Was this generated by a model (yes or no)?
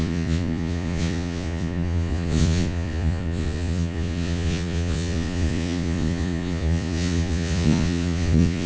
yes